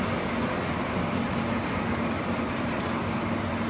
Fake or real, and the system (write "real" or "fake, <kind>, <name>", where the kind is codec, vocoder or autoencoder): real